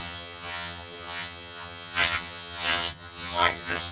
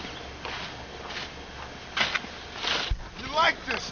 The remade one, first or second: first